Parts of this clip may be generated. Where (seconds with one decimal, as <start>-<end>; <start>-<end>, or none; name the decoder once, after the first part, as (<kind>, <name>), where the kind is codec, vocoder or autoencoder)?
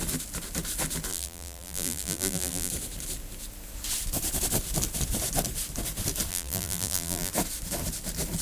1.1-2.7 (vocoder, BigVGAN v2); 6.3-7.3